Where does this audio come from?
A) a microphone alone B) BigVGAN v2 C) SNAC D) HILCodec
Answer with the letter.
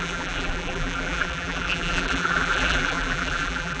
B